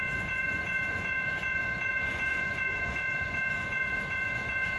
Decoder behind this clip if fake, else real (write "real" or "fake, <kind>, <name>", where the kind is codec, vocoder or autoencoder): fake, vocoder, Vocos